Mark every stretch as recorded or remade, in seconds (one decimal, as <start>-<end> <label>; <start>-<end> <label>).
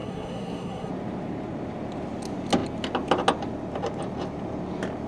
0.0-0.9 remade; 0.9-5.1 recorded